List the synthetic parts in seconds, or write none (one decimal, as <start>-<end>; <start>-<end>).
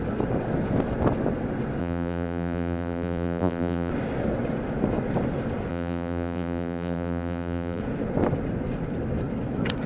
1.8-3.9; 5.7-7.8